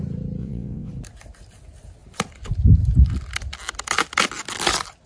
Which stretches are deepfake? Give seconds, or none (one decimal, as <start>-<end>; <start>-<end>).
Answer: 0.4-0.9